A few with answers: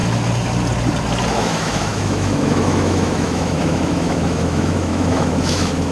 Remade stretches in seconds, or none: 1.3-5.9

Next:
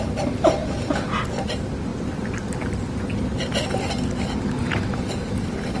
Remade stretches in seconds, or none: none

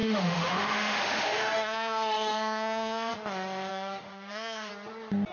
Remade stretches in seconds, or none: 0.0-3.1; 3.7-4.7